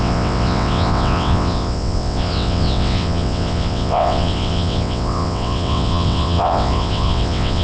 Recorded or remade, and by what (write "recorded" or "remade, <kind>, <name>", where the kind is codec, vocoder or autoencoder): remade, vocoder, WaveNeXt